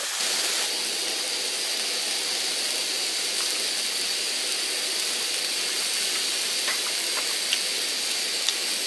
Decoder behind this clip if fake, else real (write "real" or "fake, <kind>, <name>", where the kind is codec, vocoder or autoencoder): real